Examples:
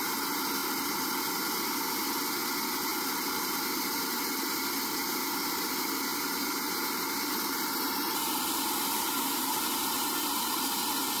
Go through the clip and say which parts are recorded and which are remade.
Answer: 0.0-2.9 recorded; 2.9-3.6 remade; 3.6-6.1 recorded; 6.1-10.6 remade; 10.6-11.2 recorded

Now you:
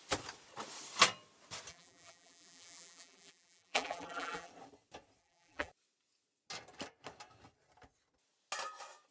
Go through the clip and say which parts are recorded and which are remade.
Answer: 0.0-1.7 recorded; 1.7-4.5 remade; 4.5-5.2 recorded; 5.2-5.7 remade; 5.7-9.1 recorded

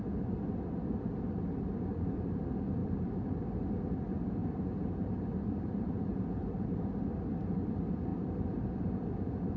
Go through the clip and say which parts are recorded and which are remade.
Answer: 0.0-2.8 recorded; 2.8-3.3 remade; 3.3-4.4 recorded; 4.4-5.9 remade; 5.9-8.1 recorded; 8.1-8.9 remade; 8.9-9.6 recorded

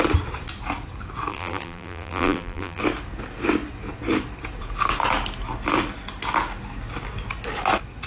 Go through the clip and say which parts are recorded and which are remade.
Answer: 0.0-1.3 recorded; 1.3-2.8 remade; 2.8-8.1 recorded

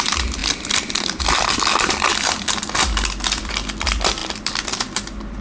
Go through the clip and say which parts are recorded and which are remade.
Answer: 0.0-5.4 remade

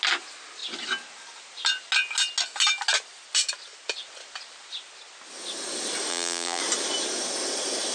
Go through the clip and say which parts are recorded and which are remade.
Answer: 0.0-6.1 recorded; 6.1-6.6 remade; 6.6-7.9 recorded

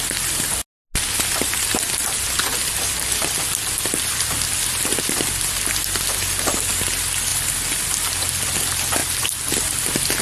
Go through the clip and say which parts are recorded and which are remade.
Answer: 0.0-9.0 recorded; 9.0-10.2 remade

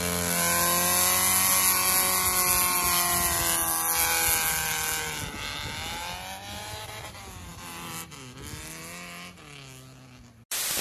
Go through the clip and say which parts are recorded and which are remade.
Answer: 0.0-10.8 recorded